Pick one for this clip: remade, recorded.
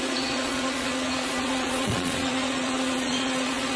remade